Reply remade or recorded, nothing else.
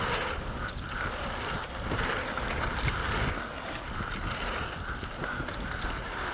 recorded